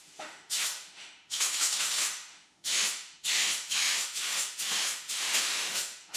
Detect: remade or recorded remade